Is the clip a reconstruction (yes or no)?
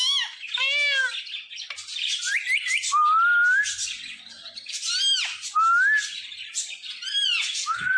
no